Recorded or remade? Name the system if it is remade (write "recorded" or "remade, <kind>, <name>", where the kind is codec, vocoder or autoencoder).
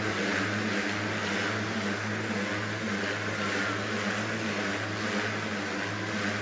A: recorded